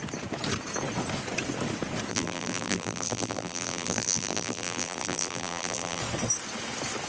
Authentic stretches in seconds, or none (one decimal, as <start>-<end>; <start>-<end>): 0.0-2.1; 6.0-7.1